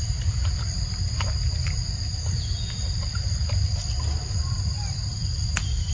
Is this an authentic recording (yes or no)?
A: yes